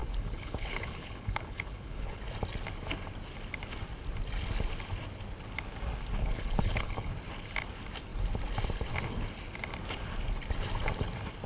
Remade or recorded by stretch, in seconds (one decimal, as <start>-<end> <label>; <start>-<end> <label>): 0.0-2.2 remade; 2.2-6.2 recorded; 6.2-7.1 remade; 7.1-11.5 recorded